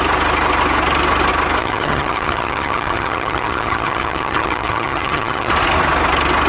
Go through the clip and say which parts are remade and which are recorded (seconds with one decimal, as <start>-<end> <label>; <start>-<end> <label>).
0.0-1.6 recorded; 1.6-5.5 remade; 5.5-6.5 recorded